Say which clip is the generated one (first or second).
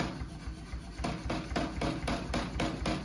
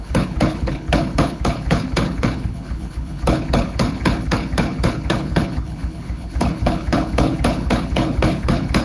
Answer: second